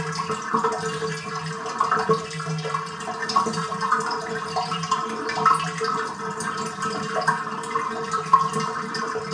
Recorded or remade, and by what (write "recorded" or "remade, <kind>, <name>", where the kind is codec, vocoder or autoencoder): recorded